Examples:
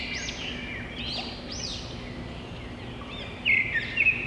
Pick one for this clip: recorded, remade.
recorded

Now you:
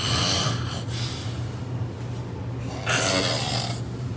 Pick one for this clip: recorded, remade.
recorded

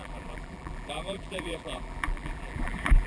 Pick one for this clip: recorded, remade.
remade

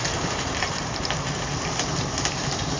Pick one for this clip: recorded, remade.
remade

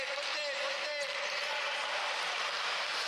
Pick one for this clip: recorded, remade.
recorded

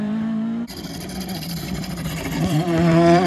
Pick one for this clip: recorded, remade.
remade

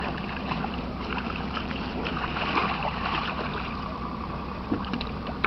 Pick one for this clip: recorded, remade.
remade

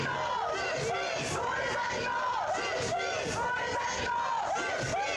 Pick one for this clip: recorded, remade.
recorded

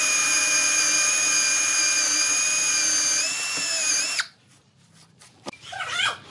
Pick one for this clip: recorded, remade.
remade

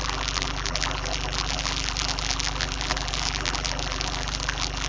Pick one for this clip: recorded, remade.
remade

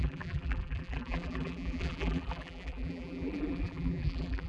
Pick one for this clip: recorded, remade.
remade